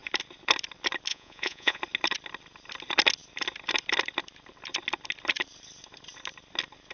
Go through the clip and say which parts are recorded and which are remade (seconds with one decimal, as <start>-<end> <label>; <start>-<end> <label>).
0.0-1.1 recorded; 1.1-1.8 remade; 1.8-6.9 recorded